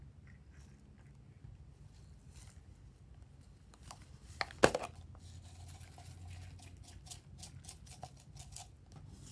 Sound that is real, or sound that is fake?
real